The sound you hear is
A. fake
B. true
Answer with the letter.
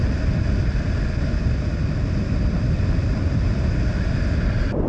B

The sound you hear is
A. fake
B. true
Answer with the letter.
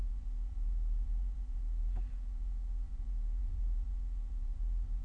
A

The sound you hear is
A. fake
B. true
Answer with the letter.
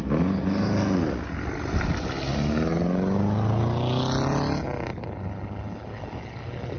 B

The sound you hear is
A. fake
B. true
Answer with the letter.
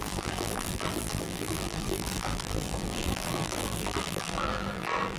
A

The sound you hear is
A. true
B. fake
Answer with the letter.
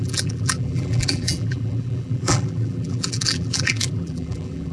B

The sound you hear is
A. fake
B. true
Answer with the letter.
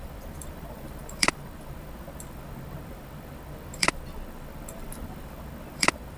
A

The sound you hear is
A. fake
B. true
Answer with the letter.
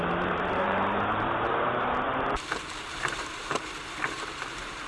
A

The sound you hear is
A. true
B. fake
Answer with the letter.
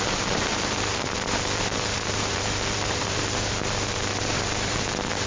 B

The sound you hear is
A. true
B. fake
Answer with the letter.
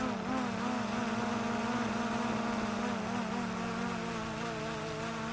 A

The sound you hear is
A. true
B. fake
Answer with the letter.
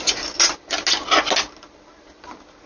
A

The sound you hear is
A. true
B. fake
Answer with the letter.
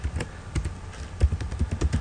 A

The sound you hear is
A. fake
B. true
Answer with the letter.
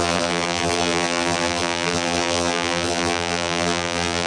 A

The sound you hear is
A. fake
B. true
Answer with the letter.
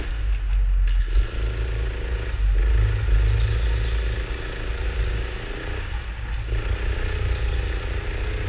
B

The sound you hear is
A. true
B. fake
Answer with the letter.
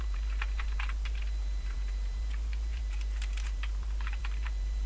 B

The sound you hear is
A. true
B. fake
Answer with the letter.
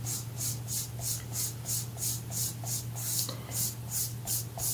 B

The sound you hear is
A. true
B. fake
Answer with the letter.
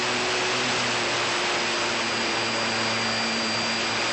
A